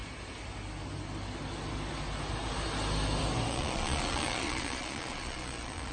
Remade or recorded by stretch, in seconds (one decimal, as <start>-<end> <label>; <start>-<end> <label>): 0.0-3.5 recorded; 3.5-5.9 remade